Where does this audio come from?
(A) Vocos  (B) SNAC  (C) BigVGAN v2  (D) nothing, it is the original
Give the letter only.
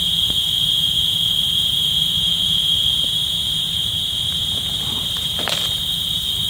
C